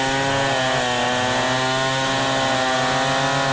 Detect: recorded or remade recorded